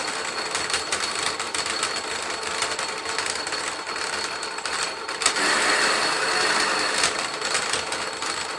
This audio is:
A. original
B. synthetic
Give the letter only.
A